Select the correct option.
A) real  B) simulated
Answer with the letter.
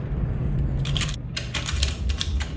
A